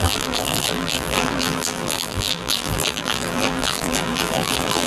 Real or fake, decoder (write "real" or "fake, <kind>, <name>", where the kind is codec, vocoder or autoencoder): fake, vocoder, BigVGAN v2